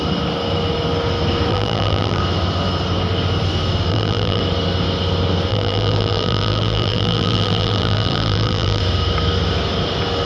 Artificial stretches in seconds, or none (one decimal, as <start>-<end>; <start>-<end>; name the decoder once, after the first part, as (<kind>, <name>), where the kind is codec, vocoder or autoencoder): 1.5-2.2 (vocoder, BigVGAN v2); 3.9-4.4; 5.5-8.8